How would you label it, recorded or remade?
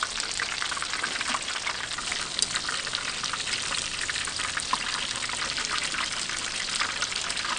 recorded